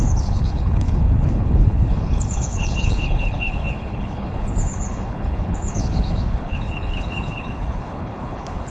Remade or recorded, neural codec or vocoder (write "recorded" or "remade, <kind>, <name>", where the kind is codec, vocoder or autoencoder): remade, codec, HILCodec